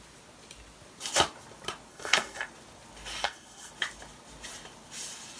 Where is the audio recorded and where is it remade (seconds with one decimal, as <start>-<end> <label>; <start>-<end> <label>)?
0.0-1.9 recorded; 1.9-2.5 remade; 2.5-3.2 recorded; 3.2-3.7 remade; 3.7-5.4 recorded